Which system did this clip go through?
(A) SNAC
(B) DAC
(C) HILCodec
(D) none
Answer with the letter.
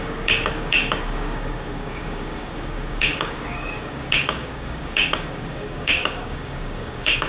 B